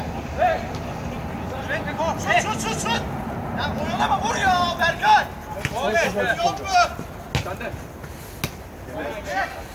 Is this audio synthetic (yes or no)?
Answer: no